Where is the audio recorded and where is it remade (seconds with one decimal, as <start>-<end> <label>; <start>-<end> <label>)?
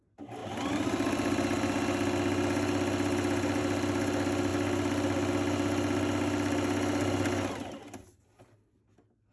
0.0-9.3 recorded